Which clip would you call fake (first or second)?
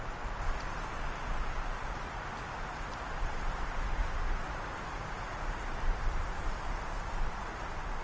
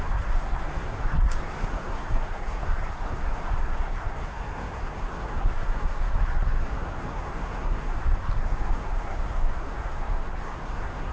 second